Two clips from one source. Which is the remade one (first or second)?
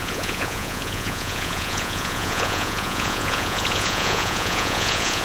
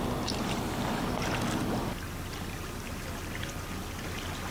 first